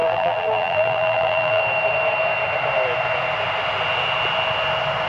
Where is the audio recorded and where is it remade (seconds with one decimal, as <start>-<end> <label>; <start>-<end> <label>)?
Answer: 0.0-1.6 remade; 1.6-5.1 recorded

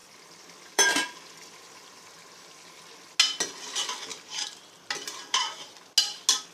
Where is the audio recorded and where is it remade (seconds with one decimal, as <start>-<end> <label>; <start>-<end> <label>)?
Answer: 0.0-2.4 remade; 2.4-4.1 recorded; 4.1-4.8 remade; 4.8-6.5 recorded

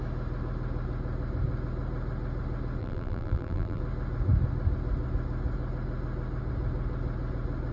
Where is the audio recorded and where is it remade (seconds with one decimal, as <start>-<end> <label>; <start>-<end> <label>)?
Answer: 0.0-2.8 recorded; 2.8-3.8 remade; 3.8-7.7 recorded

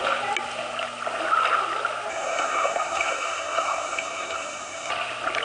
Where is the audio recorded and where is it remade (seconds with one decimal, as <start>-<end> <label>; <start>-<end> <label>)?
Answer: 0.0-2.1 recorded; 2.1-4.9 remade; 4.9-5.4 recorded

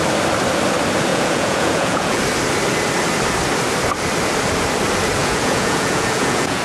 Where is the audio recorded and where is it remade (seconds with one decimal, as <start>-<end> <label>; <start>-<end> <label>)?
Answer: 0.0-1.1 recorded; 1.1-2.2 remade; 2.2-5.2 recorded; 5.2-6.6 remade